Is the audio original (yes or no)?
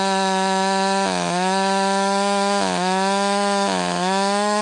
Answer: no